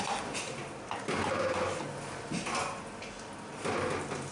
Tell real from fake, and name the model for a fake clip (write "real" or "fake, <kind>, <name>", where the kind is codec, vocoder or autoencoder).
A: real